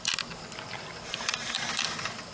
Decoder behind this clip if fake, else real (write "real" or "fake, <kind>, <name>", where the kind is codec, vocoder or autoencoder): real